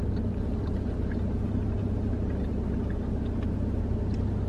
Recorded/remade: recorded